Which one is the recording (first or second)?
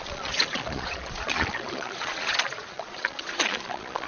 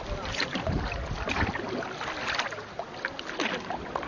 second